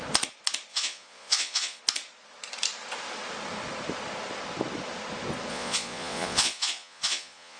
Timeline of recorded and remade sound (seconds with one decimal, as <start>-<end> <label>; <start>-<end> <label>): 0.0-0.7 recorded; 0.7-1.8 remade; 1.8-5.5 recorded; 5.5-7.6 remade